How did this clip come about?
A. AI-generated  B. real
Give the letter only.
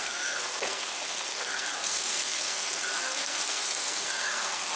A